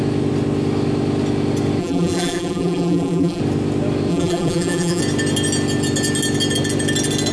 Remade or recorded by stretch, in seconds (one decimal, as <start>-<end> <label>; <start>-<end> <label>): 0.0-1.8 recorded; 1.8-3.4 remade; 3.4-4.1 recorded; 4.1-5.0 remade; 5.0-7.3 recorded